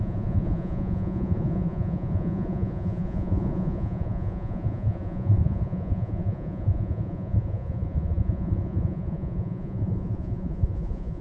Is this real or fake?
fake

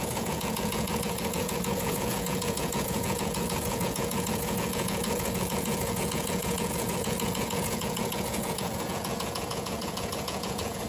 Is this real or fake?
fake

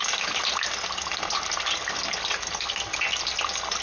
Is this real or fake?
real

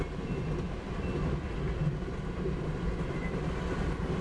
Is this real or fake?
real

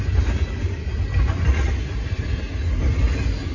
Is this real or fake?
real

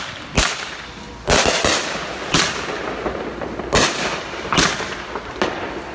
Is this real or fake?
real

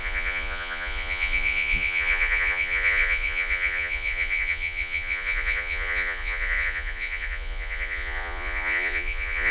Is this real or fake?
fake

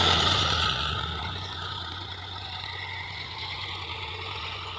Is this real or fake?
fake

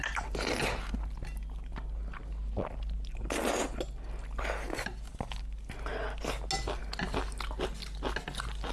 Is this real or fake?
real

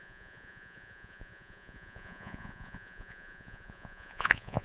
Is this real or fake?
fake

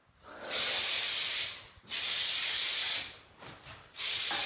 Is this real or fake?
real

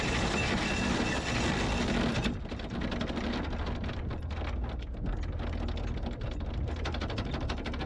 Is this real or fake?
real